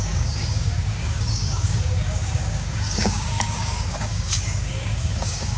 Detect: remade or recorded remade